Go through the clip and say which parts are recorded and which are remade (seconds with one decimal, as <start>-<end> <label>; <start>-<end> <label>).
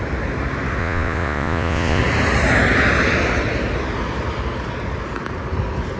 0.0-0.8 recorded; 0.8-2.0 remade; 2.0-6.0 recorded